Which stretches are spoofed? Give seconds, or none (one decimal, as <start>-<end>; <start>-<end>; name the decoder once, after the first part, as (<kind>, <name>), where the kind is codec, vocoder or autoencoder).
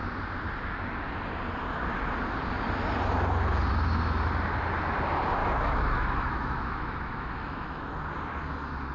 5.4-7.9 (autoencoder, DAC-VAE)